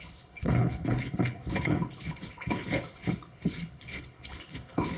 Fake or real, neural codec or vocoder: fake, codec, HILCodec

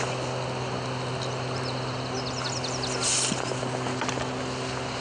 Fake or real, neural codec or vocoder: real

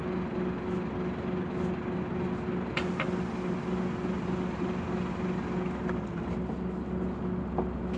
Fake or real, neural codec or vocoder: real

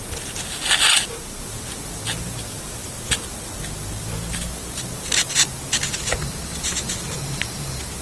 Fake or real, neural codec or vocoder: real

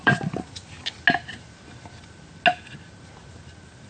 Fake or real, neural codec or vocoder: real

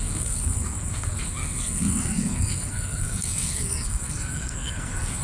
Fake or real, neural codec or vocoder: fake, codec, SNAC